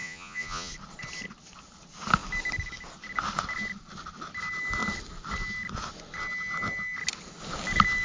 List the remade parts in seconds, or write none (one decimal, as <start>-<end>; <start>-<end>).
0.0-0.7